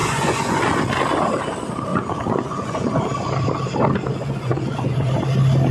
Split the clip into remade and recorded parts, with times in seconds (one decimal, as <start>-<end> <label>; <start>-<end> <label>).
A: 0.0-0.6 remade; 0.6-1.9 recorded; 1.9-3.0 remade; 3.0-4.2 recorded; 4.2-5.1 remade; 5.1-5.7 recorded